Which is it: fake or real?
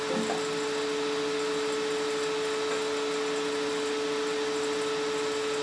real